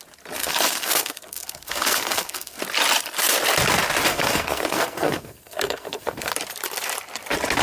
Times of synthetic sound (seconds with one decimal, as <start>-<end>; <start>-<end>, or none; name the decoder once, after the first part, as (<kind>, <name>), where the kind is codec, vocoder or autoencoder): 0.4-2.6 (codec, SNAC); 4.1-6.3